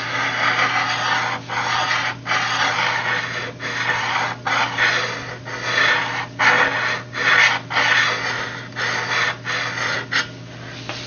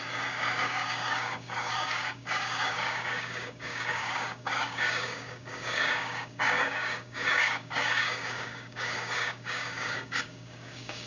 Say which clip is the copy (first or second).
second